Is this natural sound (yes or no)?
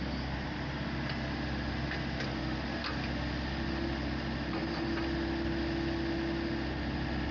yes